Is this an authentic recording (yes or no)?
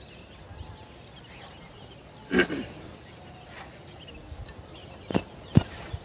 yes